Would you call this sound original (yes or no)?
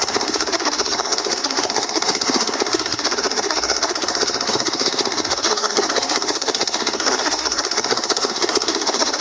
no